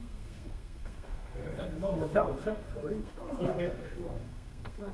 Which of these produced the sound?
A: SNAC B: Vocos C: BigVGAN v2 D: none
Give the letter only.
A